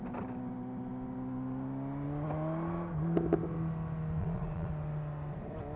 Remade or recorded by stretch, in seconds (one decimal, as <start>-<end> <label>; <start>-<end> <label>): 0.0-4.2 recorded; 4.2-4.7 remade; 4.7-5.8 recorded

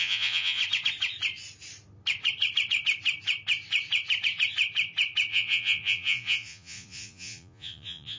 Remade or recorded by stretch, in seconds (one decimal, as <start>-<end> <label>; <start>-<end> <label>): 0.0-0.6 remade; 0.6-5.3 recorded; 5.3-8.2 remade

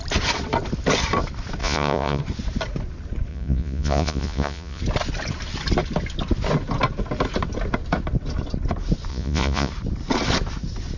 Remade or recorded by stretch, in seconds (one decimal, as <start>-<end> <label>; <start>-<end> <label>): 0.0-1.6 recorded; 1.6-2.2 remade; 2.2-3.3 recorded; 3.3-4.8 remade; 4.8-9.1 recorded; 9.1-9.7 remade; 9.7-11.0 recorded

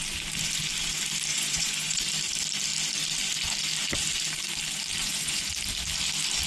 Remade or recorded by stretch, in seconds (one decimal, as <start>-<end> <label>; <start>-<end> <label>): 0.0-1.3 recorded; 1.3-2.0 remade; 2.0-5.0 recorded; 5.0-5.5 remade; 5.5-6.5 recorded

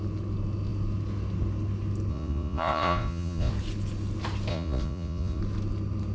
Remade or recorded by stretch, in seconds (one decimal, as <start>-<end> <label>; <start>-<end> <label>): 0.0-2.1 recorded; 2.1-3.5 remade; 3.5-4.5 recorded; 4.5-5.4 remade; 5.4-6.1 recorded

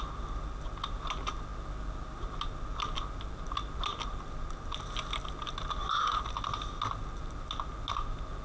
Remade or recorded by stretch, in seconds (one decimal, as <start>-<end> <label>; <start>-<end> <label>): 0.0-8.4 recorded

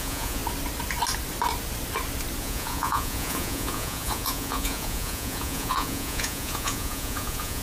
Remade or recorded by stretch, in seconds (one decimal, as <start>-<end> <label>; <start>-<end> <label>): 0.0-0.4 remade; 0.4-2.4 recorded; 2.4-7.6 remade

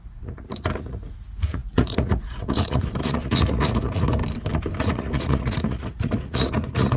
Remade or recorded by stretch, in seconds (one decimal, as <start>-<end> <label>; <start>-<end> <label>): 0.0-4.2 remade; 4.2-4.8 recorded; 4.8-7.0 remade